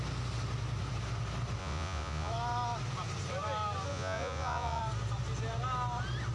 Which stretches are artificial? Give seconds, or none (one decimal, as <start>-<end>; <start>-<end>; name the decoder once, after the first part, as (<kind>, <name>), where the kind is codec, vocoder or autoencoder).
1.6-2.3 (vocoder, Vocos); 3.9-4.8